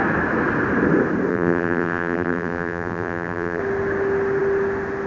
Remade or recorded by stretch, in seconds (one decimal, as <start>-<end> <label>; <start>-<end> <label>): 0.0-1.3 recorded; 1.3-3.6 remade; 3.6-5.1 recorded